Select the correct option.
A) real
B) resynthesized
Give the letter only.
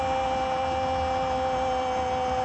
A